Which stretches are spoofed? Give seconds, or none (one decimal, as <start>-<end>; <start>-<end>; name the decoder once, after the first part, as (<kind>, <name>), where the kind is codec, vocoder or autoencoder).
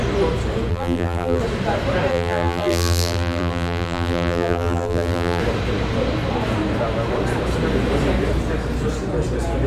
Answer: 0.7-1.4 (vocoder, BigVGAN v2); 2.1-5.4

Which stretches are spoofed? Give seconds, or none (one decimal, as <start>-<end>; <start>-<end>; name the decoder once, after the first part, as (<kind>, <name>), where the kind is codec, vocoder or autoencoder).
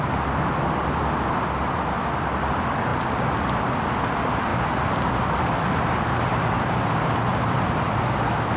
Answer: 2.9-3.5 (vocoder, BigVGAN v2); 4.5-5.0; 6.3-7.3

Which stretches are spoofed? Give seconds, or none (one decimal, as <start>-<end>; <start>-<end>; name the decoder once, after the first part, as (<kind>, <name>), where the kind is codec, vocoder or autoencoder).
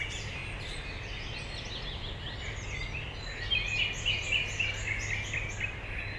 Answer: none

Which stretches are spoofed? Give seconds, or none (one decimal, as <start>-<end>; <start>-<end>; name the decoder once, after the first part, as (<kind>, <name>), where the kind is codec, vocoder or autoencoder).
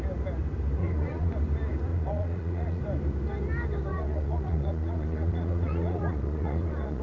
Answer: 0.8-1.3 (vocoder, Vocos); 1.9-2.8; 3.9-7.0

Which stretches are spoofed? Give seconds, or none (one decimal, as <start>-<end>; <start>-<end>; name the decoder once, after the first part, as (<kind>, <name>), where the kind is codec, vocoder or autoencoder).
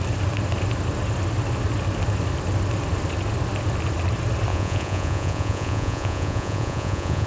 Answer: 4.5-7.3 (vocoder, Vocos)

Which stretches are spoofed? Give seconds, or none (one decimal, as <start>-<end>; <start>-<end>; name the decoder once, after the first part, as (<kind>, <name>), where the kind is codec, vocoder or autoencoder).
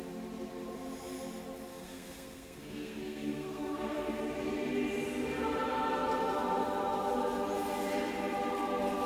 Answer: 1.7-4.2 (codec, SNAC)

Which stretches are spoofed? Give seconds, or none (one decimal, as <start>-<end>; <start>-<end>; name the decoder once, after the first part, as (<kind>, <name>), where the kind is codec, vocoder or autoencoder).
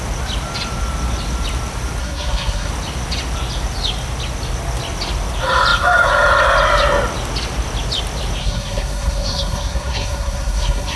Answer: 2.0-2.7 (codec, SNAC); 8.4-11.0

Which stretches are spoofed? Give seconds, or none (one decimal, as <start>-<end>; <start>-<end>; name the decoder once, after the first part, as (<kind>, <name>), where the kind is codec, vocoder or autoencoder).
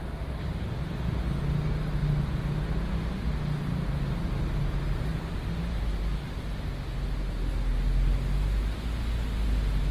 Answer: 5.1-6.0 (vocoder, BigVGAN v2)